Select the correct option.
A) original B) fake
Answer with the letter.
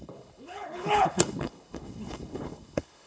B